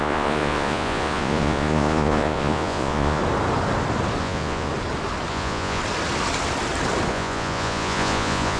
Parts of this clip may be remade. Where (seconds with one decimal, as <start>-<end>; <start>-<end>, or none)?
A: 0.0-3.2; 4.2-4.7; 5.3-5.8; 7.1-8.6